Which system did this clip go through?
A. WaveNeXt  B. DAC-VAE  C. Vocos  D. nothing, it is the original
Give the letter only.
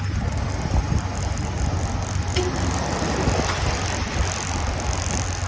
D